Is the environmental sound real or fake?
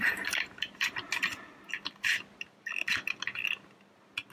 real